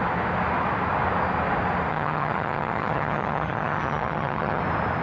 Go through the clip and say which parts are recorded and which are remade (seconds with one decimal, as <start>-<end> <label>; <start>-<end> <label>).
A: 0.0-1.9 recorded; 1.9-4.6 remade; 4.6-5.0 recorded